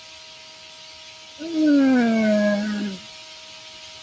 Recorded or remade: recorded